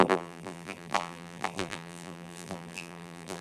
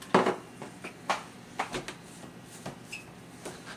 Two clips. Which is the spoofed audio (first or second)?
first